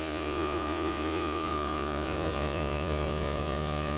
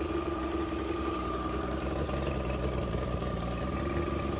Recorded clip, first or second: second